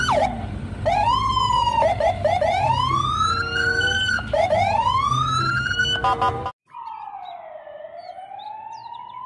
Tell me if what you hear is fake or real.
real